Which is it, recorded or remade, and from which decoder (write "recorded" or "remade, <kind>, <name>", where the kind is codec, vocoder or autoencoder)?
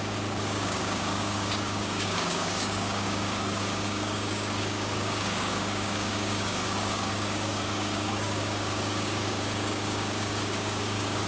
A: remade, codec, DAC